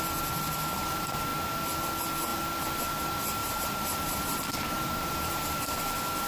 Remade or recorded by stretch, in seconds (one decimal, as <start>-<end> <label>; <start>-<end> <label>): 0.0-2.3 recorded; 2.3-2.8 remade; 2.8-3.4 recorded; 3.4-5.8 remade; 5.8-6.3 recorded